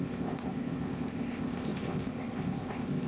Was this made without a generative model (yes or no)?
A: no